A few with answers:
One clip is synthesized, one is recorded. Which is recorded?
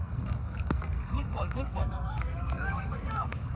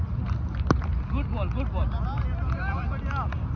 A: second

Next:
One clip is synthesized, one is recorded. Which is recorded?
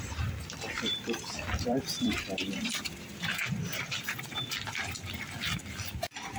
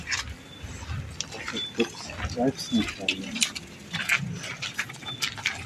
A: second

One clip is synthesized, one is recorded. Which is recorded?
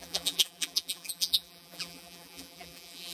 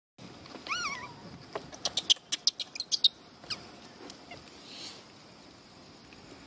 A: second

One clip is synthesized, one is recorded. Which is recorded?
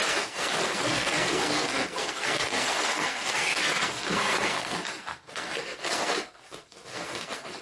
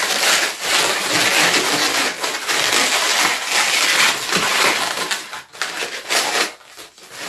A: second